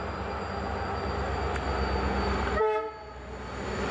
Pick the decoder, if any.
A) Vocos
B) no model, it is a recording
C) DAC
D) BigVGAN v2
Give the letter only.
B